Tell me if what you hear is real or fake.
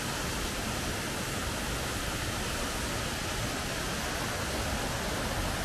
real